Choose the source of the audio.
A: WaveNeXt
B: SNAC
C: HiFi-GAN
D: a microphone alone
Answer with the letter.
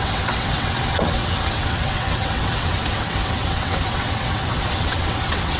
A